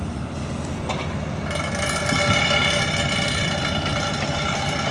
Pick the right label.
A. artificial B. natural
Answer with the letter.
B